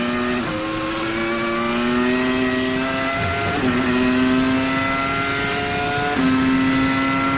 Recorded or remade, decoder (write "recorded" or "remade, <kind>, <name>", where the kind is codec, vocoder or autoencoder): recorded